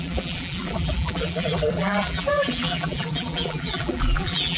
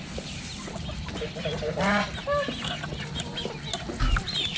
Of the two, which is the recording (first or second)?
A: second